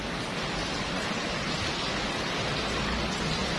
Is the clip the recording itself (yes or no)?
yes